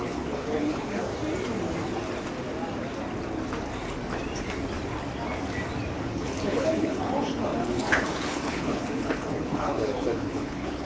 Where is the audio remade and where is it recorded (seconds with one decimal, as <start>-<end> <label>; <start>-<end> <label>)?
0.0-1.1 remade; 1.1-6.0 recorded; 6.0-10.8 remade